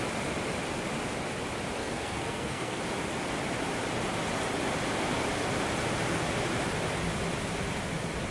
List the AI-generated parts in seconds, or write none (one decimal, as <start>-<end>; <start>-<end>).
1.8-2.8